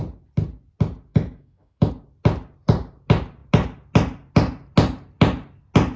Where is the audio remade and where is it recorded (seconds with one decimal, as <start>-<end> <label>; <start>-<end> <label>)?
0.0-1.1 recorded; 1.1-1.9 remade; 1.9-6.0 recorded